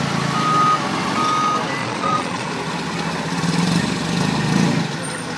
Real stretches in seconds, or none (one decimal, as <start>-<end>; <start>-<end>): 0.0-1.8; 2.5-5.4